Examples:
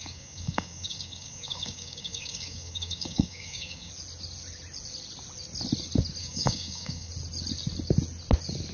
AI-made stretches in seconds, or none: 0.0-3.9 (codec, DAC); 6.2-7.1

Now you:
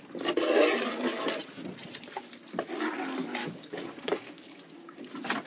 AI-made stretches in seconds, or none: 3.4-5.1 (codec, DAC)

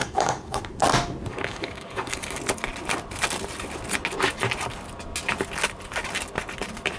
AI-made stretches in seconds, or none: 0.0-0.6 (codec, DAC); 1.3-2.4

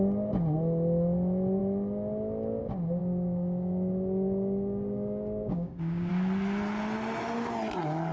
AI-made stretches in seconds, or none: 3.0-6.1 (codec, DAC)

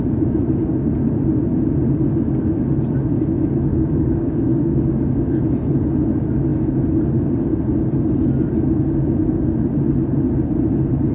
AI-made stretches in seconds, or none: 3.7-5.3 (codec, DAC)

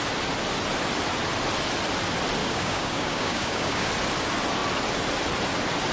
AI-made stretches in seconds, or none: 2.4-3.9 (codec, DAC)